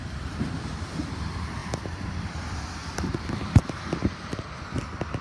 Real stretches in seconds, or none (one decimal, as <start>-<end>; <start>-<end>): none